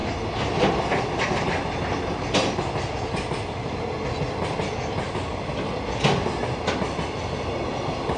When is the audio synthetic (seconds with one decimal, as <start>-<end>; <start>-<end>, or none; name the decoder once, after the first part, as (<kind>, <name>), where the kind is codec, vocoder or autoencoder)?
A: none